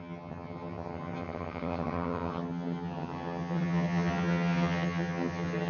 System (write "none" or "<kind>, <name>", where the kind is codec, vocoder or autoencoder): vocoder, HiFi-GAN